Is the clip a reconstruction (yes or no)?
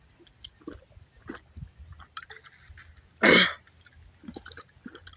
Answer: no